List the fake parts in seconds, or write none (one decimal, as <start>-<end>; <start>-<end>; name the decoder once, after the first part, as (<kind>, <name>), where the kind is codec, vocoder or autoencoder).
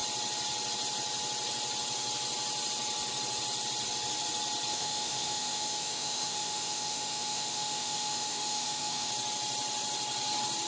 4.7-9.1 (autoencoder, DAC-VAE)